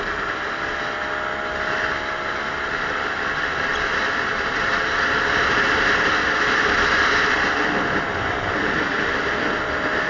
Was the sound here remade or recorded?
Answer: recorded